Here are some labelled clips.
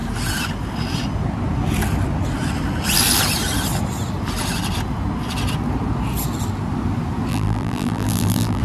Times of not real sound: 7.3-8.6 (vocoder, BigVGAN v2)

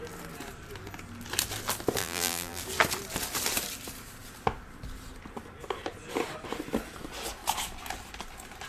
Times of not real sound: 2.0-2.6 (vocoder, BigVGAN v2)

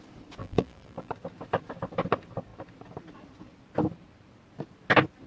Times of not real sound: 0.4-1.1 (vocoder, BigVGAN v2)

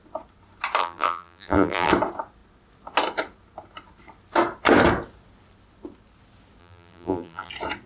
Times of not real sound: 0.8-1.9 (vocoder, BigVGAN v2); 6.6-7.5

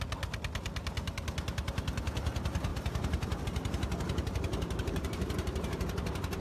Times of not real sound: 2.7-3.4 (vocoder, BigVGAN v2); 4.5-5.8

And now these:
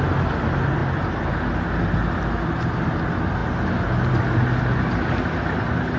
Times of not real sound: none